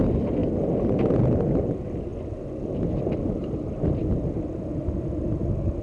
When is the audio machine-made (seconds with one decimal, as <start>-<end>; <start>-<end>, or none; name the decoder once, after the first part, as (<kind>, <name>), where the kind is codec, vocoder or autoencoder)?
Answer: none